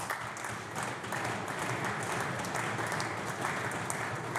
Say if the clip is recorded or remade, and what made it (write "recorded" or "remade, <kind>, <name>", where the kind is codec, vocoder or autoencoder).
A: recorded